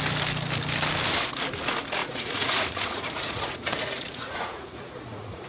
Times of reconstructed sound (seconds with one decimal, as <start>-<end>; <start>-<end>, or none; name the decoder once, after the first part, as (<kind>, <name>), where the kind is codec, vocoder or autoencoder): 2.0-5.5 (vocoder, Vocos)